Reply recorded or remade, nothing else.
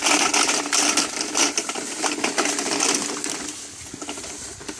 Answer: recorded